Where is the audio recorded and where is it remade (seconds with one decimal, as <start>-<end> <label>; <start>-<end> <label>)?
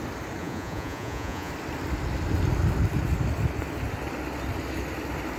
0.0-0.4 recorded; 0.4-1.5 remade; 1.5-5.4 recorded